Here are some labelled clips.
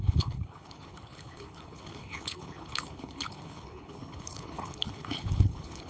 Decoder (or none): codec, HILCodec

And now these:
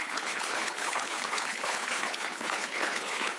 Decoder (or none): codec, HILCodec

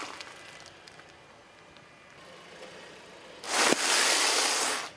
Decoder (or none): none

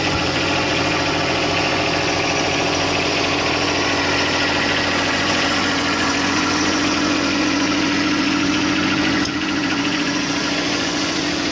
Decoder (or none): vocoder, Vocos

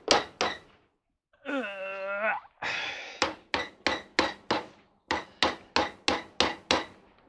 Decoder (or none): none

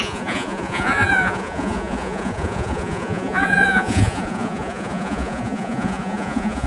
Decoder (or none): vocoder, Vocos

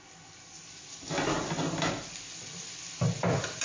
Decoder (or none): none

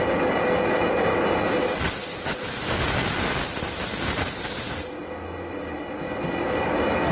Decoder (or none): none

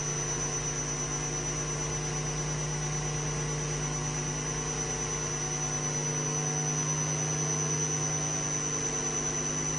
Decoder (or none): none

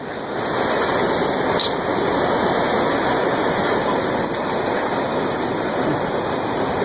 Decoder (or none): none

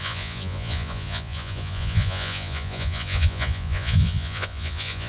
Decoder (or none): vocoder, Vocos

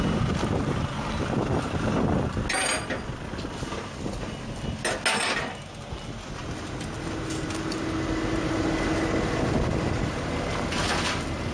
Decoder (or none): none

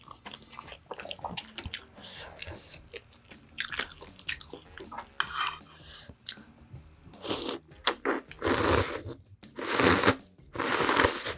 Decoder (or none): none